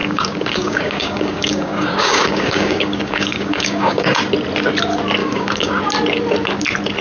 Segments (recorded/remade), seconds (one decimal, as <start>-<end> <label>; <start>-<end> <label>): 0.0-4.2 remade; 4.2-5.2 recorded; 5.2-5.7 remade; 5.7-7.0 recorded

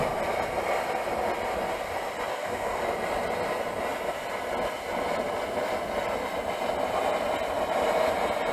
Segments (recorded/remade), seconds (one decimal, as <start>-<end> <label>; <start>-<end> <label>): 0.0-2.3 recorded; 2.3-2.8 remade; 2.8-8.5 recorded

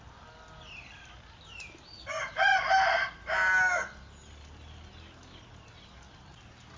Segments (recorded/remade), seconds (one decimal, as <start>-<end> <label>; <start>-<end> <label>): 0.0-6.8 recorded

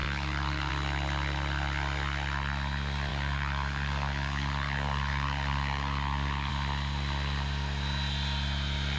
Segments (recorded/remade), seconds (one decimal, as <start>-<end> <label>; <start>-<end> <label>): 0.0-0.7 remade; 0.7-3.1 recorded; 3.1-6.5 remade; 6.5-9.0 recorded

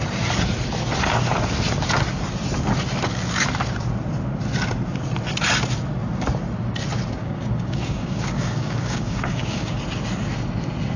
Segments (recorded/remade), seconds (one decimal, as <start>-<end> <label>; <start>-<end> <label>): 0.0-7.2 recorded; 7.2-9.8 remade; 9.8-11.0 recorded

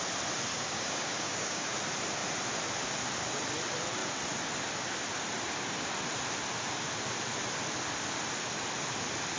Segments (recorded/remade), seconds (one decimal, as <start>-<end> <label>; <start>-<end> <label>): 0.0-0.5 recorded; 0.5-1.7 remade; 1.7-9.4 recorded

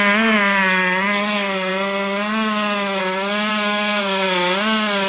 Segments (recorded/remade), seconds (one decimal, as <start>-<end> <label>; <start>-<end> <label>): 0.0-3.5 recorded; 3.5-4.0 remade; 4.0-5.1 recorded

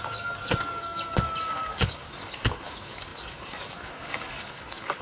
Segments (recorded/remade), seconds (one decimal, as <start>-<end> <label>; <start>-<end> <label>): 0.0-5.0 remade